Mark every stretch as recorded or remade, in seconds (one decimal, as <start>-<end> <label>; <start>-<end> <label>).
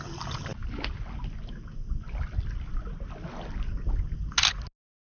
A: 0.0-5.1 recorded